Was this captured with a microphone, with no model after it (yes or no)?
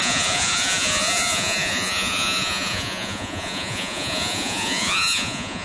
no